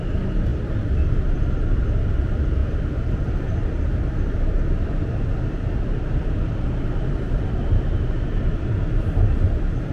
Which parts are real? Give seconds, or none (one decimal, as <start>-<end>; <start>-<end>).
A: 0.0-0.5; 1.8-2.6; 7.7-9.9

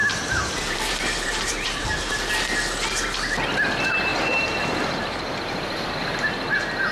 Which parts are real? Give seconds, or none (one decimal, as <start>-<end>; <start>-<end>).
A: 2.3-4.1; 5.9-6.9

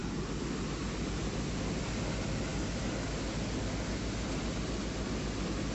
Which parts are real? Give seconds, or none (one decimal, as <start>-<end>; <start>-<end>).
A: 0.0-5.7

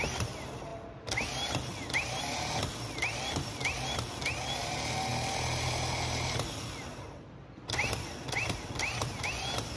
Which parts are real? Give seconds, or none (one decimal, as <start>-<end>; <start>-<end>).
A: 0.0-9.8

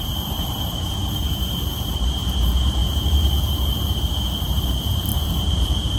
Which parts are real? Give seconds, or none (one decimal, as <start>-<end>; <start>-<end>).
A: none

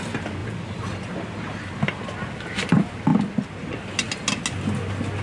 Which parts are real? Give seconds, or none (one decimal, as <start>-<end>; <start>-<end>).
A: 0.0-0.4; 1.8-5.2

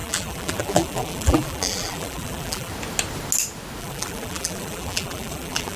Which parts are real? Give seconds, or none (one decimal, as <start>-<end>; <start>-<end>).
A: 2.7-3.8

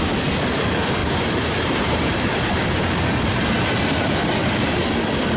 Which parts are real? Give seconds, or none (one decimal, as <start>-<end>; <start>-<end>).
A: 0.0-1.0; 2.5-5.4